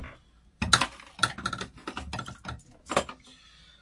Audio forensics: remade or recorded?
recorded